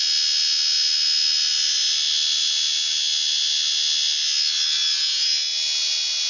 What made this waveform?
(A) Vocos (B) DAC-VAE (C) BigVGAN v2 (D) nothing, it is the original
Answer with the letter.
D